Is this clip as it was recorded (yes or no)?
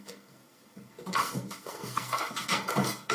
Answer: no